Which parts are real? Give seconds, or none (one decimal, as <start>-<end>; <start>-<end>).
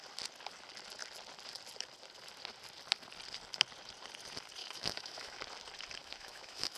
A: 0.0-4.6; 5.4-6.0